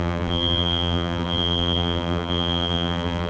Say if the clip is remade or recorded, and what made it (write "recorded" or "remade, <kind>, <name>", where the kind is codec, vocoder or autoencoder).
remade, vocoder, BigVGAN v2